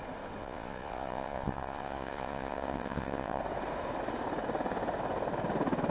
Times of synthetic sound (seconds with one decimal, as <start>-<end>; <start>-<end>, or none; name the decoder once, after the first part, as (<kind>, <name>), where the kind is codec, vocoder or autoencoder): 0.4-3.4 (vocoder, Vocos)